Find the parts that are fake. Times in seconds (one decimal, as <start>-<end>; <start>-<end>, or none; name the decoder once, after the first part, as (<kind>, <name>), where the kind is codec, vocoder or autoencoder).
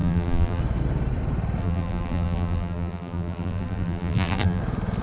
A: 0.0-0.6 (vocoder, BigVGAN v2); 1.6-4.6